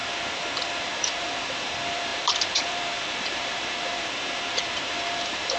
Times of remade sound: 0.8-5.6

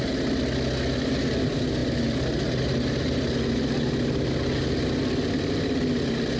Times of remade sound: none

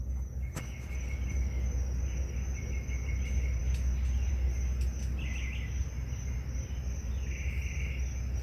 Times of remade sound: none

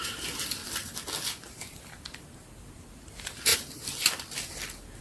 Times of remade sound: 0.0-0.6; 1.5-3.5

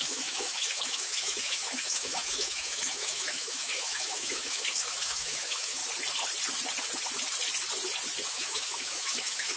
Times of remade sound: 0.0-5.8; 8.3-9.6